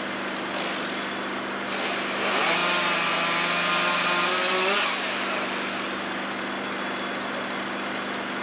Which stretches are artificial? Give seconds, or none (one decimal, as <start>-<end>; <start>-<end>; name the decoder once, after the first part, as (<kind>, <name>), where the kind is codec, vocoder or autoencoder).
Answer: none